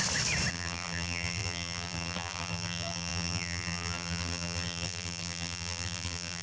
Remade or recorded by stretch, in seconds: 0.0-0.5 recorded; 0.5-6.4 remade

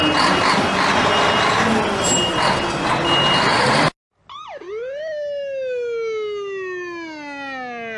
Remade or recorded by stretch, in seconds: 0.0-8.0 recorded